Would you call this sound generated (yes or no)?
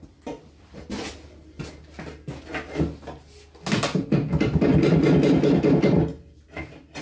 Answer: no